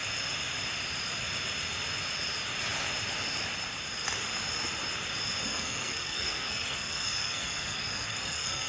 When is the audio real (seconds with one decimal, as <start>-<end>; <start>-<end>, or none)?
0.0-5.4